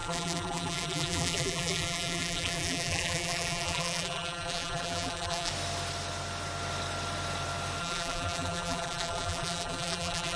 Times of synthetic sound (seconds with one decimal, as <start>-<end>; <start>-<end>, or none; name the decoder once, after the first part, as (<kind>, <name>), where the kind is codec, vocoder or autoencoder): 0.0-5.5 (vocoder, BigVGAN v2); 7.8-10.4